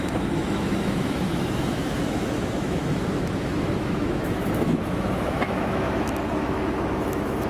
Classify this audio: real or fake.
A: fake